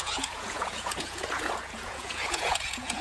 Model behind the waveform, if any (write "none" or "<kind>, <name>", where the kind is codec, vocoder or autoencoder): vocoder, Vocos